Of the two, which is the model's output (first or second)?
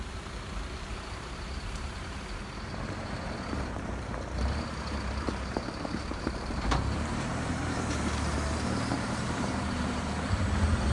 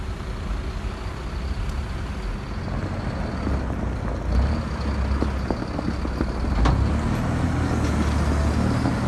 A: first